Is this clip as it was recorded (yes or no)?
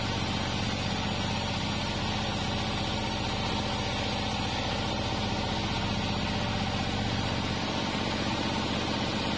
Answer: yes